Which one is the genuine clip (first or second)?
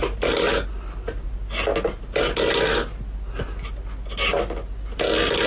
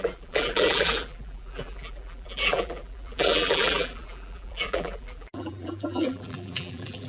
first